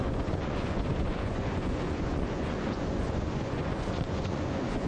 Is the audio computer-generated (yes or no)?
yes